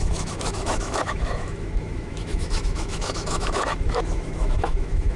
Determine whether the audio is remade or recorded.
remade